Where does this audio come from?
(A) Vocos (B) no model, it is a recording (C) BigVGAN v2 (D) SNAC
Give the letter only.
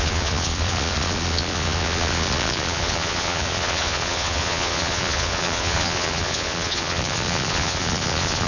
A